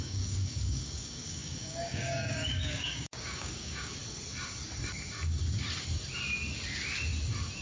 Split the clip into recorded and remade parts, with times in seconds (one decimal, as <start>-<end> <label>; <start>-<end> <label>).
0.0-4.0 remade; 4.0-7.6 recorded